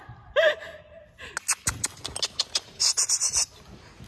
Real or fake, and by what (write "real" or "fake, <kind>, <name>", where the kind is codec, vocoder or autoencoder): real